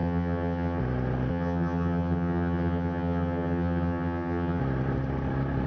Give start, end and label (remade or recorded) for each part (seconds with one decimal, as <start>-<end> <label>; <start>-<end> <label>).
0.0-0.8 remade; 0.8-1.3 recorded; 1.3-4.6 remade; 4.6-5.7 recorded